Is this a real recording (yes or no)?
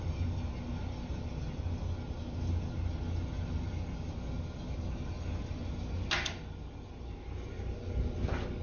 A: yes